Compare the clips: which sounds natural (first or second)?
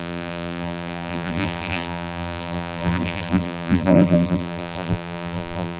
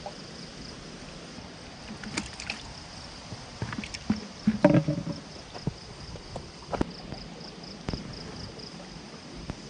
second